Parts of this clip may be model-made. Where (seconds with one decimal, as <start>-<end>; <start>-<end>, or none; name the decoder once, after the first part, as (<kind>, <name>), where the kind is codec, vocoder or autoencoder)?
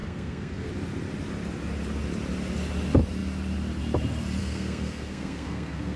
0.0-0.7 (codec, SNAC); 4.4-6.0